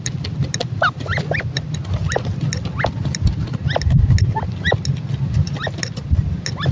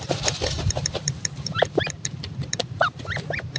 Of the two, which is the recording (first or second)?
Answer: first